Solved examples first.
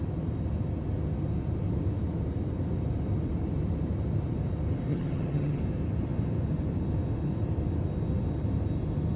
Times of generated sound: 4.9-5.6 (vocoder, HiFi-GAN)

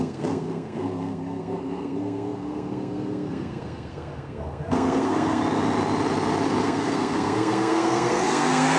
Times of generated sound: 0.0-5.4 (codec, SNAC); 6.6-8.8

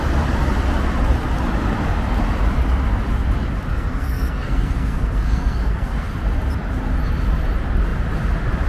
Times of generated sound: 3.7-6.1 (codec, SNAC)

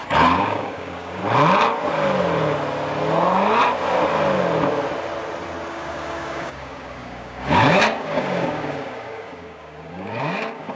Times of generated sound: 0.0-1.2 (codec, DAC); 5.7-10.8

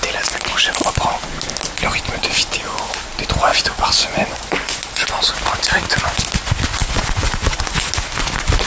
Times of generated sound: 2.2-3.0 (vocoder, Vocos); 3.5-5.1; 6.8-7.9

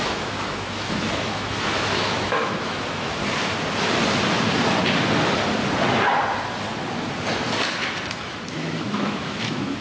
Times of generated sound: 0.0-3.2 (autoencoder, DAC-VAE); 8.1-9.8